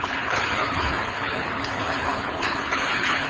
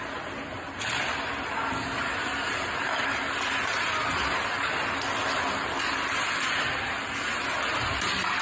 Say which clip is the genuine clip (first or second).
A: second